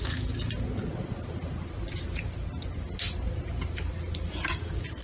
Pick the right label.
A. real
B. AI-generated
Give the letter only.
A